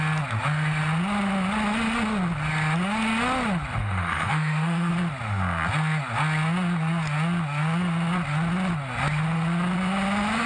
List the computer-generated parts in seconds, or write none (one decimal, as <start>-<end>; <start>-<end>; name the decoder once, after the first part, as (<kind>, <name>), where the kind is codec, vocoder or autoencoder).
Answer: 3.8-4.9 (autoencoder, DAC-VAE)